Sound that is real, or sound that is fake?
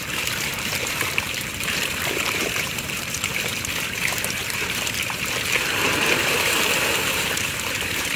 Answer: fake